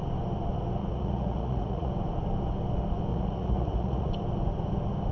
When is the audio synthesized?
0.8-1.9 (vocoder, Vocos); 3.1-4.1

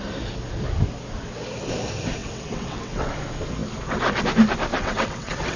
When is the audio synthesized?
2.2-3.1 (vocoder, WaveNeXt); 4.7-5.6

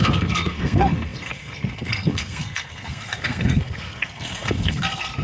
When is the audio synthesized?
0.0-5.2 (codec, SNAC)

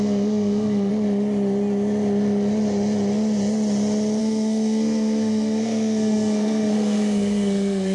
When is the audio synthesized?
0.0-0.9 (codec, SNAC); 4.2-7.9